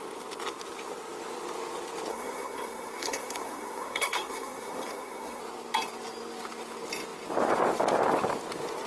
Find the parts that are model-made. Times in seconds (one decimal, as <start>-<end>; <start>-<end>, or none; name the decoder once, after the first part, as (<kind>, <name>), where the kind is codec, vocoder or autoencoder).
2.1-5.4 (codec, SNAC)